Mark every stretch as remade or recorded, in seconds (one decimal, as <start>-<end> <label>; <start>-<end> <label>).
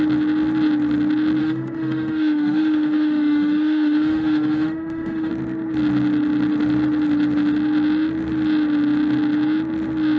0.0-1.4 recorded; 1.4-5.3 remade; 5.3-10.2 recorded